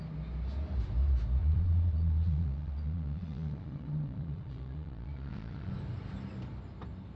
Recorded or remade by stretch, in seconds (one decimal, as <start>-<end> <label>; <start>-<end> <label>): 0.0-1.4 recorded; 1.4-5.7 remade; 5.7-7.2 recorded